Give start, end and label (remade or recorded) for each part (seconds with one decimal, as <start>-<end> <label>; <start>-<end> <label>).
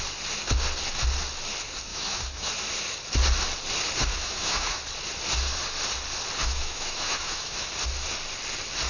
0.0-1.9 recorded; 1.9-2.5 remade; 2.5-4.1 recorded; 4.1-4.8 remade; 4.8-6.4 recorded; 6.4-7.7 remade; 7.7-8.9 recorded